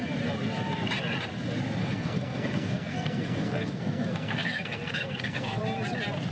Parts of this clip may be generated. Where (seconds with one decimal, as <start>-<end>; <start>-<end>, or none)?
1.8-5.6